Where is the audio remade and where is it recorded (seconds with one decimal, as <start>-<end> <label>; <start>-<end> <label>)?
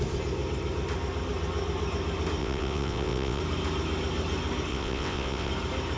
0.0-2.4 recorded; 2.4-3.4 remade; 3.4-4.7 recorded; 4.7-5.5 remade; 5.5-6.0 recorded